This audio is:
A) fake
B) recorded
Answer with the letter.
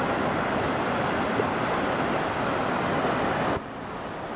B